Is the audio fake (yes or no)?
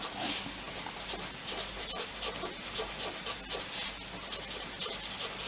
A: no